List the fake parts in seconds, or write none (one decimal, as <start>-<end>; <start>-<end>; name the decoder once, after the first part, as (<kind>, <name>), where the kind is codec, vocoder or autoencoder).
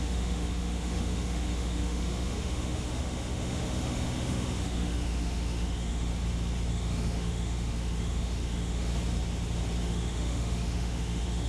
0.0-6.1 (autoencoder, DAC-VAE); 6.7-8.9; 9.8-11.5